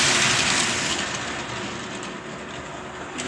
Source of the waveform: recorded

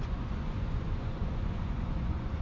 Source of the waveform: remade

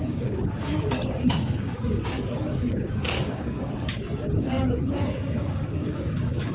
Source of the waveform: remade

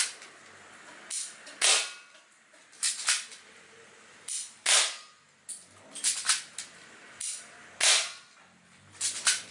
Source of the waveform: recorded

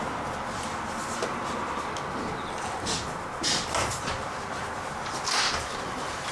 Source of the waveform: recorded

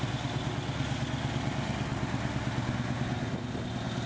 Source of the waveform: recorded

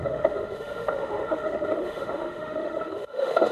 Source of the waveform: remade